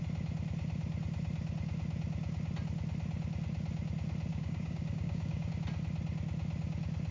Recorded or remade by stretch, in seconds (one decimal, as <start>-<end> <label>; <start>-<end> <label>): 0.0-4.3 recorded; 4.3-5.5 remade; 5.5-7.1 recorded